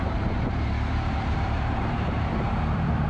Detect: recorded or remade remade